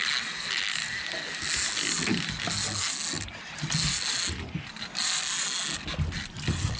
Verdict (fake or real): real